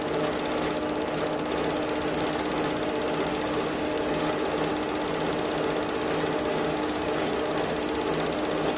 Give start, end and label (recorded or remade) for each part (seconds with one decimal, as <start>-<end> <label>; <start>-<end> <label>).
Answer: 0.0-3.3 recorded; 3.3-4.1 remade; 4.1-6.5 recorded; 6.5-7.5 remade; 7.5-8.8 recorded